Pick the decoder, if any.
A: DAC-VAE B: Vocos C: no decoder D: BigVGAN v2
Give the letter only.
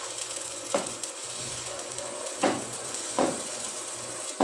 B